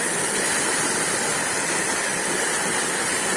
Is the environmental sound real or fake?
real